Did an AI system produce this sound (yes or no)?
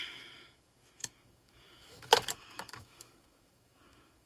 yes